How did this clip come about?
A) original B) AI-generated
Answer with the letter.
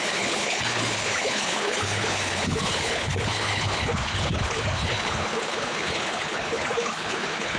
B